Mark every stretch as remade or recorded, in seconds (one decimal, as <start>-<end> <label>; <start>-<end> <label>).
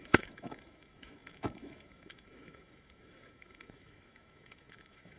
0.0-5.2 remade